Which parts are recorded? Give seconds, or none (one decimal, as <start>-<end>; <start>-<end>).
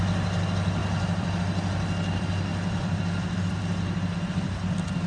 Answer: 0.0-0.8; 1.4-2.5; 3.6-5.1